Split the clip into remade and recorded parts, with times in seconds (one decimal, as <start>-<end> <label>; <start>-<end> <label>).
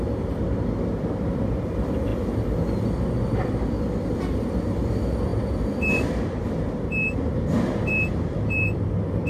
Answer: 0.0-9.3 remade